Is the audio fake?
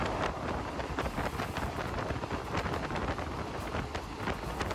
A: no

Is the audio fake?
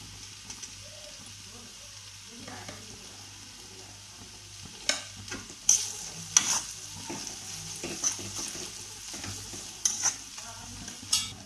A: no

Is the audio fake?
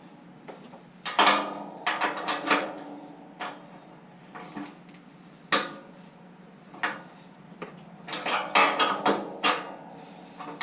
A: no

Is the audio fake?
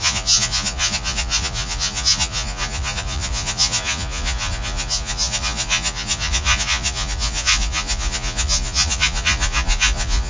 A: yes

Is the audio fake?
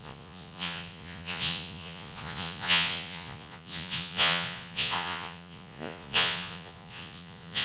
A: yes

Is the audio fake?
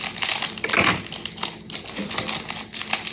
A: no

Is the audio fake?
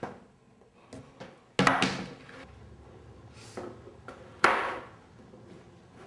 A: no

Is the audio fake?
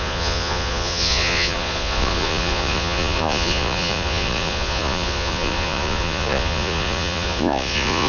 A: yes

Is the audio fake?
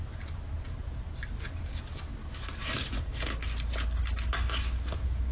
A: no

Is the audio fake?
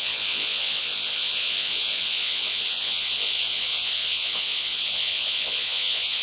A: yes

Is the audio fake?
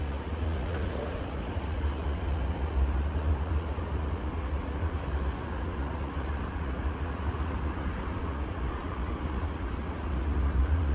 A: yes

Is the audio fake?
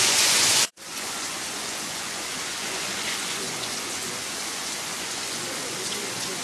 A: yes